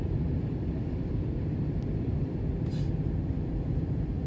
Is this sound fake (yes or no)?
yes